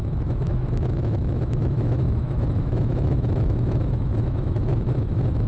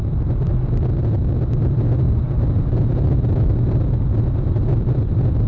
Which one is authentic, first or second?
second